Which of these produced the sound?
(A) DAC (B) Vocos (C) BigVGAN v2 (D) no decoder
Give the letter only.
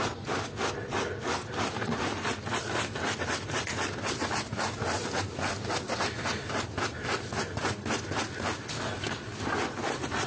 D